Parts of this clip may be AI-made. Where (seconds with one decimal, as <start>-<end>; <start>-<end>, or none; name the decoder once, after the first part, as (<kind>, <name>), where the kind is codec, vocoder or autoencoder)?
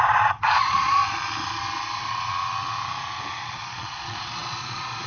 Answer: 0.0-1.0 (vocoder, Vocos); 3.3-5.1